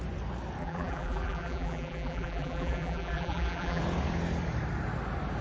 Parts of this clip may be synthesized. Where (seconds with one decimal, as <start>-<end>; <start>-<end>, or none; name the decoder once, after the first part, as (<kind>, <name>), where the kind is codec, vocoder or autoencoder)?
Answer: 0.6-3.8 (vocoder, BigVGAN v2)